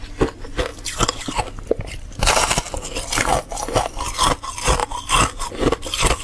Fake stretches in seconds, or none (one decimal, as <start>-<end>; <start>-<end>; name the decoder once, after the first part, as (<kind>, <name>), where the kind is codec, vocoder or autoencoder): none